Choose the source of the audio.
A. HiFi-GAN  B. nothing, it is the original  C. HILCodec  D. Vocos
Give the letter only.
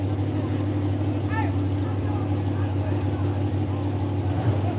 B